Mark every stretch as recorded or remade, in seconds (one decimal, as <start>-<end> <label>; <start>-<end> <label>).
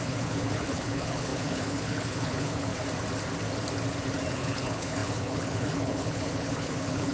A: 0.0-2.7 remade; 2.7-4.3 recorded; 4.3-7.1 remade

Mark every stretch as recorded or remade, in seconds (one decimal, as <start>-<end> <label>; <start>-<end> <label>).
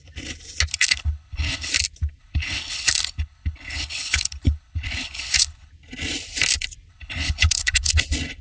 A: 0.0-0.7 recorded; 0.7-1.7 remade; 1.7-2.2 recorded; 2.2-5.7 remade; 5.7-6.9 recorded; 6.9-7.9 remade; 7.9-8.4 recorded